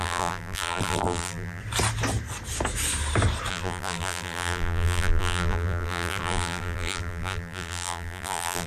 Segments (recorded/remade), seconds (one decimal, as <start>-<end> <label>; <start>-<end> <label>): 0.0-1.6 remade; 1.6-3.5 recorded; 3.5-8.7 remade